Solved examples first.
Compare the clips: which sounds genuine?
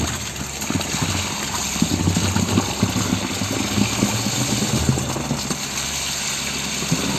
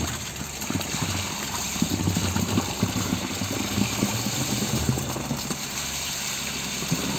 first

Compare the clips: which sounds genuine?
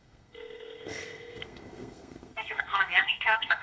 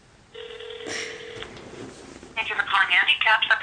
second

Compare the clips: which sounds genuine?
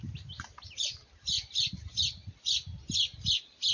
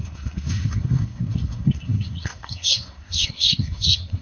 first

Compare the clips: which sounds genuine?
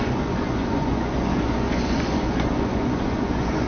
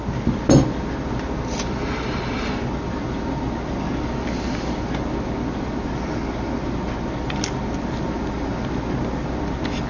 second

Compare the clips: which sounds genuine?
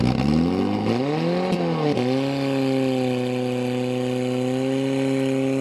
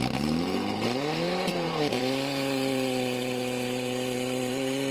first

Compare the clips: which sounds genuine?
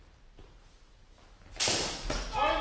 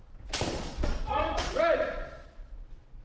first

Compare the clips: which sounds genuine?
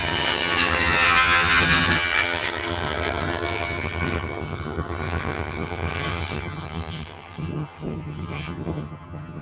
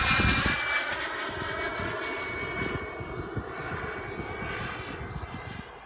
second